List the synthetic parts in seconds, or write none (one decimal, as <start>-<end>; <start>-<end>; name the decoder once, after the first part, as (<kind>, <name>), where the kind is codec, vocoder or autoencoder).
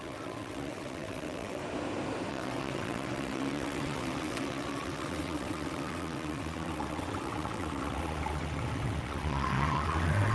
0.0-1.6 (vocoder, WaveNeXt); 2.3-10.3